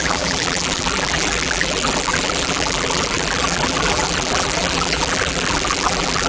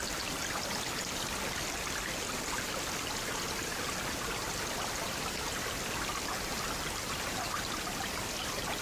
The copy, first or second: first